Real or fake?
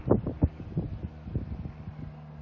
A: real